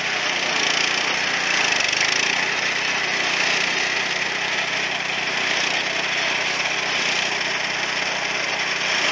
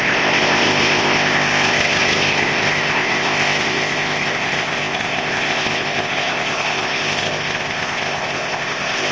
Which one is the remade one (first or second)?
second